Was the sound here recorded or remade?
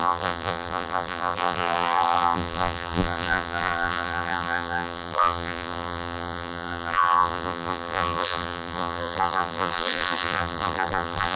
remade